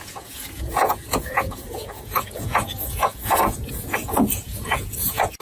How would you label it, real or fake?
fake